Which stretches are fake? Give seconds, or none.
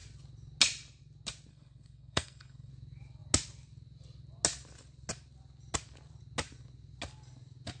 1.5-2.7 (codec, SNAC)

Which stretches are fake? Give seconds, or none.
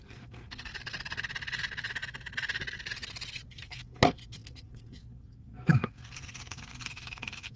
0.0-0.7 (codec, SNAC); 3.5-7.6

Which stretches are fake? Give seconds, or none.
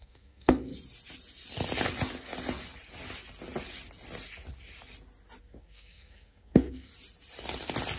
0.0-0.7 (codec, SNAC); 5.4-6.9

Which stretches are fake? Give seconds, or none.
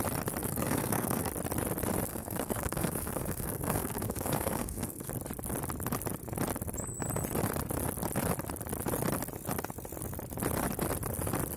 0.4-1.3 (codec, SNAC); 2.1-5.1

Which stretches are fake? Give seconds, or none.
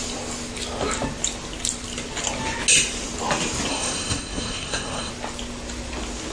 3.7-5.1 (codec, SNAC)